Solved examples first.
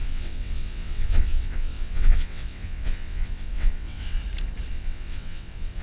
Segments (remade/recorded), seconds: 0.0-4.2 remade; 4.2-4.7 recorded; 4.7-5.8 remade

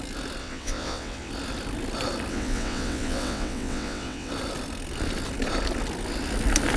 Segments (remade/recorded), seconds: 0.0-0.4 recorded; 0.4-1.3 remade; 1.3-2.3 recorded; 2.3-4.3 remade; 4.3-6.8 recorded

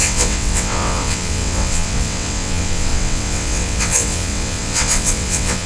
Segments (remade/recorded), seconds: 0.0-5.7 remade

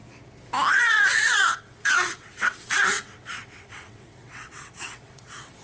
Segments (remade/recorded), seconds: 0.0-0.7 recorded; 0.7-5.6 remade

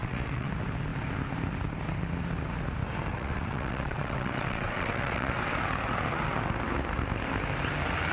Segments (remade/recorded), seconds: 0.0-0.5 remade; 0.5-3.1 recorded; 3.1-5.3 remade; 5.3-8.1 recorded

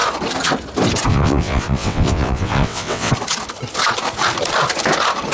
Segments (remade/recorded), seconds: 0.0-1.1 recorded; 1.1-3.1 remade; 3.1-5.3 recorded